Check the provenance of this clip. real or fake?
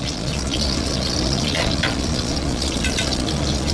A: fake